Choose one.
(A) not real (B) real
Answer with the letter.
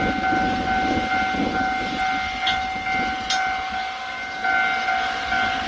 B